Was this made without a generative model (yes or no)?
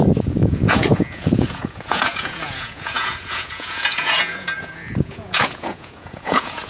no